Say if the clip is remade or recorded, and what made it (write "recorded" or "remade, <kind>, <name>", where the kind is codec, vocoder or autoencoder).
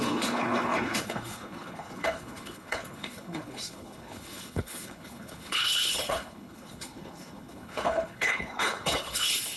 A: remade, codec, HILCodec